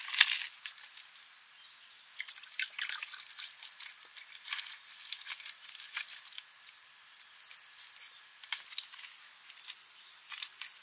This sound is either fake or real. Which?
real